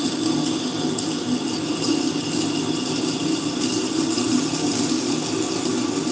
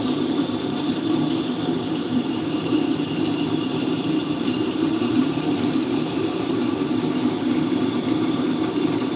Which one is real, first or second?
first